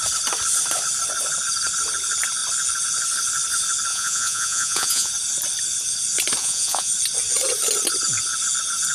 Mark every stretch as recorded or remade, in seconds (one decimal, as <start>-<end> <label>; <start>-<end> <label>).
0.0-3.9 recorded; 3.9-5.1 remade; 5.1-6.4 recorded; 6.4-6.9 remade; 6.9-8.9 recorded